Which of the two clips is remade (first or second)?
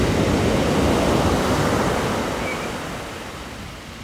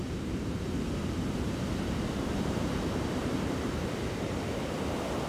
second